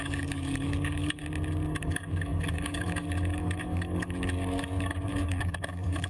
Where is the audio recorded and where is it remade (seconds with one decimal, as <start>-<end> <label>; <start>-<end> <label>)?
0.0-1.2 remade; 1.2-1.8 recorded; 1.8-6.1 remade